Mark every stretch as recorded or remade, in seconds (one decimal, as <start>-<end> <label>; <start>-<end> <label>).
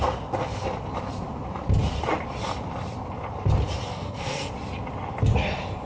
0.0-3.9 recorded; 3.9-4.5 remade; 4.5-5.9 recorded